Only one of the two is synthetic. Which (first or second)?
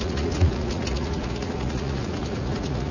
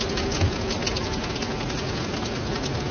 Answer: first